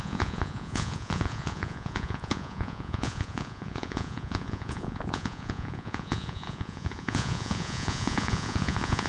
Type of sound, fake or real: fake